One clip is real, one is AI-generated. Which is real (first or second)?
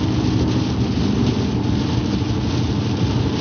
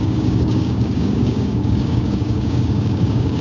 first